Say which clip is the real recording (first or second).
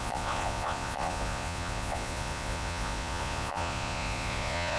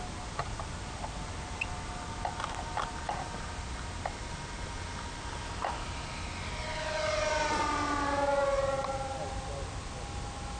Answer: second